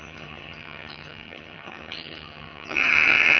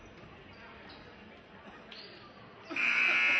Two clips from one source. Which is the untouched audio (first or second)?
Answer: second